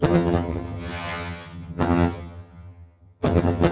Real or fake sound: fake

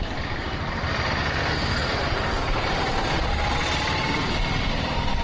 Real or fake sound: real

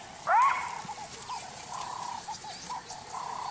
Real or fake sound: real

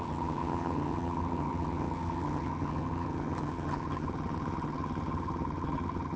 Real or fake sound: fake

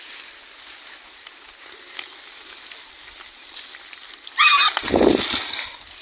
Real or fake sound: real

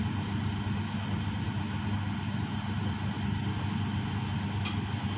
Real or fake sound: real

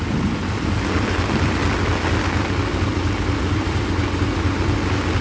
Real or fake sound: real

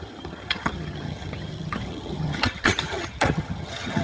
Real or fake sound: fake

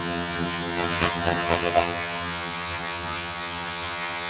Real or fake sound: fake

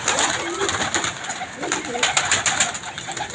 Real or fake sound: real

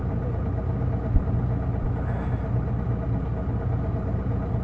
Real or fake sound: real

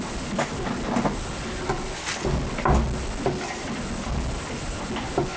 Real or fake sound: real